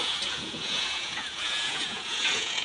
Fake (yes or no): yes